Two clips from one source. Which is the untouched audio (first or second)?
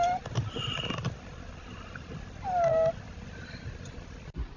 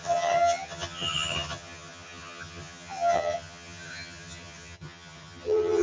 first